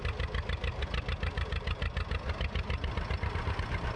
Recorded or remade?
recorded